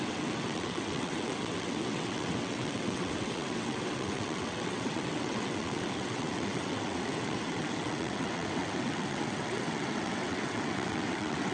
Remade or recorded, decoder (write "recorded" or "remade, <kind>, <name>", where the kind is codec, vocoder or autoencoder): remade, vocoder, WaveNeXt